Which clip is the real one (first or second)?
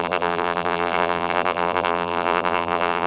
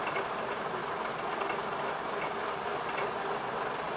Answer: second